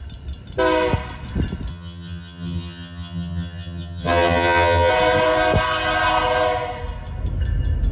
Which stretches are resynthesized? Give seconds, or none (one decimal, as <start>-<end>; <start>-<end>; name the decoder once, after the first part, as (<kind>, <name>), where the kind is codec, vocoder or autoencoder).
1.7-4.9 (vocoder, HiFi-GAN)